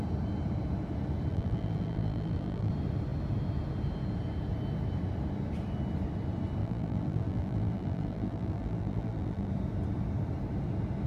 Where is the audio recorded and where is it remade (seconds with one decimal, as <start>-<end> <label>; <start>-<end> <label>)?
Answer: 0.0-1.3 recorded; 1.3-2.7 remade; 2.7-6.6 recorded; 6.6-9.5 remade; 9.5-11.1 recorded